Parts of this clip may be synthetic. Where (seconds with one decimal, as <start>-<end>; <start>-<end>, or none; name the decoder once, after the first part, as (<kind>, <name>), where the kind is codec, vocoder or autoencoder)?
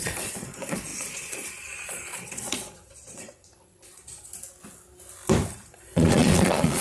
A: 0.0-4.3 (vocoder, Vocos); 5.5-6.8